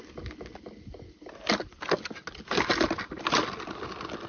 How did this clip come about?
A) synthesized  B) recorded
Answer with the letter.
B